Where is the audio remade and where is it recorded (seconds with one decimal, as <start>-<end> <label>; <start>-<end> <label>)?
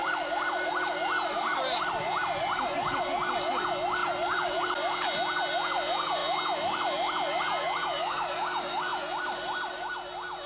0.0-0.7 remade; 0.7-4.0 recorded; 4.0-4.6 remade; 4.6-10.5 recorded